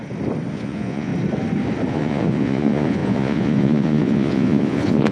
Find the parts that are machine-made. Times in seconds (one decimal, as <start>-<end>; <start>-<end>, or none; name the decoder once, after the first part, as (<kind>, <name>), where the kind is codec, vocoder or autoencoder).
0.5-1.1 (vocoder, Vocos); 1.9-5.1